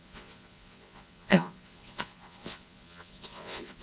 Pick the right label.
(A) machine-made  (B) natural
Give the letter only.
A